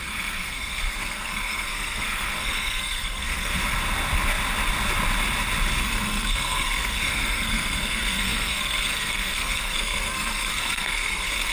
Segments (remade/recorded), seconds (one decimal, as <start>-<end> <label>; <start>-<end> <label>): 0.0-3.5 remade; 3.5-5.8 recorded; 5.8-11.5 remade